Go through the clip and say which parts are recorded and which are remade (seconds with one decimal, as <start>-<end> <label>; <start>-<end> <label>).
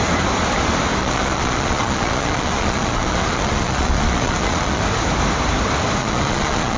0.0-1.0 recorded; 1.0-4.8 remade; 4.8-6.0 recorded; 6.0-6.8 remade